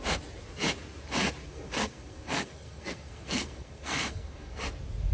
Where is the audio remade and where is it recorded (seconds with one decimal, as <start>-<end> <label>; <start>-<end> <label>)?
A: 0.0-1.5 recorded; 1.5-4.6 remade; 4.6-5.1 recorded